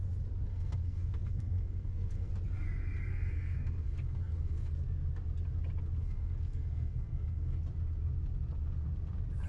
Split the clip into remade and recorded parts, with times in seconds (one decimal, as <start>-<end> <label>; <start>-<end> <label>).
0.0-0.5 recorded; 0.5-2.3 remade; 2.3-3.1 recorded; 3.1-4.7 remade; 4.7-6.0 recorded; 6.0-7.6 remade; 7.6-9.5 recorded